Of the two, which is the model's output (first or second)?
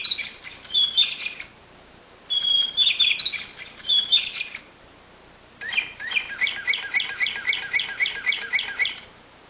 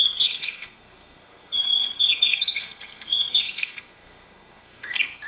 second